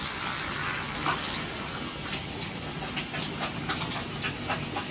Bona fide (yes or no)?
yes